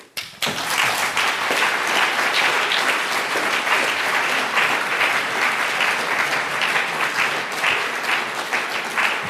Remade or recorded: recorded